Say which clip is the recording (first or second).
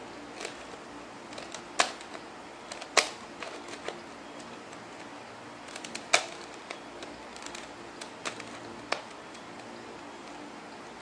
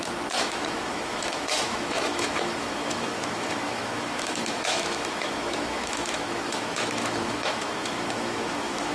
first